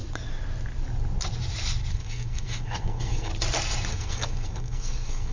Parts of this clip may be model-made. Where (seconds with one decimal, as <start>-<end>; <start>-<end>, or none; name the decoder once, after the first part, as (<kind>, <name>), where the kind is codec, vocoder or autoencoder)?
1.9-3.3 (codec, SNAC); 3.9-5.3